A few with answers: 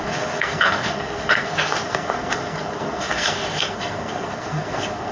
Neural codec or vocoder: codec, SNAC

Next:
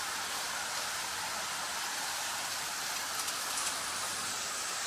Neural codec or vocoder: none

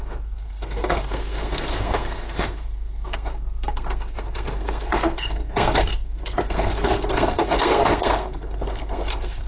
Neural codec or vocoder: codec, SNAC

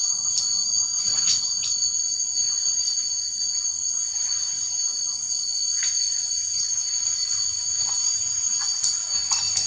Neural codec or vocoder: none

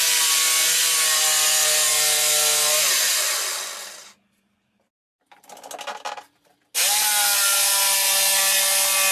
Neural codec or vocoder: none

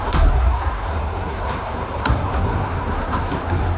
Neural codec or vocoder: codec, SNAC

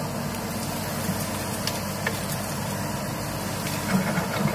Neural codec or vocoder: none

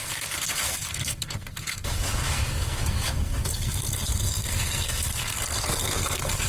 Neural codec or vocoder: codec, SNAC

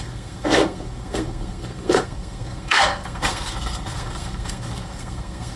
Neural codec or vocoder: codec, SNAC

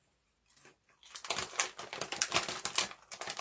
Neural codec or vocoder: none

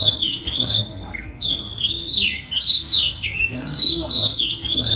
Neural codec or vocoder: codec, SNAC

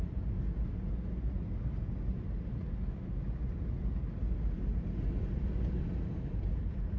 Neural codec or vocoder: none